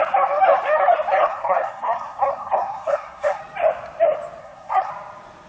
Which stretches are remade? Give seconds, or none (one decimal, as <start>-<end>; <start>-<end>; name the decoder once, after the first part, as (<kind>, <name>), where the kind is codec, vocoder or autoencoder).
1.2-3.4 (codec, SNAC); 4.4-4.9